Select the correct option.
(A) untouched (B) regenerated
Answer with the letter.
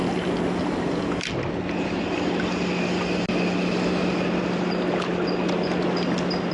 A